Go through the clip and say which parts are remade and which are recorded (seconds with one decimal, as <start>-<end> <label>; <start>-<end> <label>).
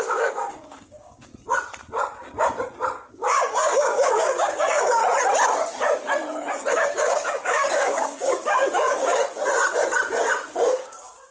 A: 0.0-1.3 remade; 1.3-3.1 recorded; 3.1-5.0 remade; 5.0-6.7 recorded; 6.7-9.2 remade; 9.2-10.5 recorded; 10.5-11.3 remade